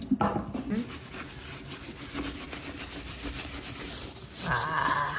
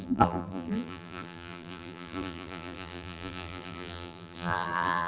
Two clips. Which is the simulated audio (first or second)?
second